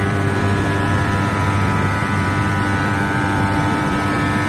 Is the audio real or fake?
fake